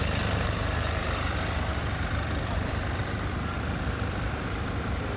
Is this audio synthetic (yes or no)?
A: yes